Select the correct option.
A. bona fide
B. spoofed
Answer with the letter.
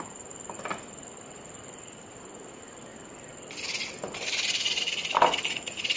A